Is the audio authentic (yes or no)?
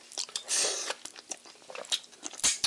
yes